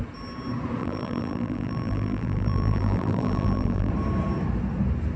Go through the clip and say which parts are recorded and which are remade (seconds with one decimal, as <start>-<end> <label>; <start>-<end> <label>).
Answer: 0.0-0.8 recorded; 0.8-3.9 remade; 3.9-5.2 recorded